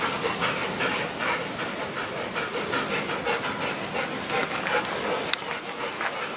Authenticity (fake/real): real